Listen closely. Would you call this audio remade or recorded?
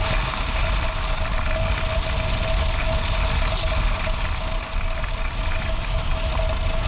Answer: recorded